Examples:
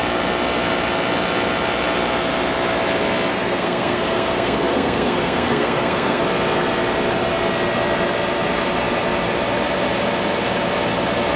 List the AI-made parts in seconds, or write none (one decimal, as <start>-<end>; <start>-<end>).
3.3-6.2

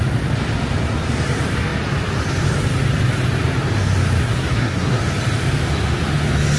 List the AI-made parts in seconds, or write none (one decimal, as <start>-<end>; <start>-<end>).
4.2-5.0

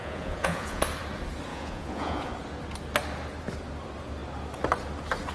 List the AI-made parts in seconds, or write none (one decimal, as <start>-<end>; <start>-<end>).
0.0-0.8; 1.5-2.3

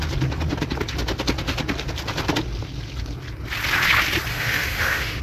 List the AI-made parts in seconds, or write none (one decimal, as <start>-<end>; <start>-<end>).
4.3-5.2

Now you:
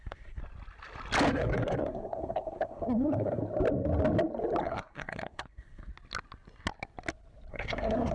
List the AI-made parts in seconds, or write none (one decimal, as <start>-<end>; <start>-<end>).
0.0-0.4; 1.3-3.4; 4.6-5.9; 7.5-8.1

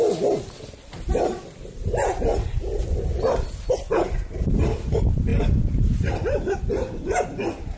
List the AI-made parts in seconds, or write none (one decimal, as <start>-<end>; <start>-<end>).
none

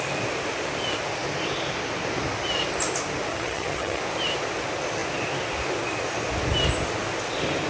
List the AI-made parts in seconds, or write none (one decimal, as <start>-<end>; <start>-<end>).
3.3-4.0

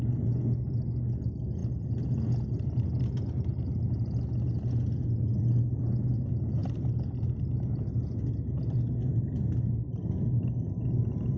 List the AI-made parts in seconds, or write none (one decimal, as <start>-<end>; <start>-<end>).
6.6-7.4; 9.1-11.4